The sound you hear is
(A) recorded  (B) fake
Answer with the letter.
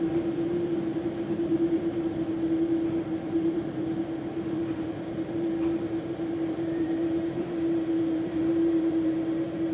B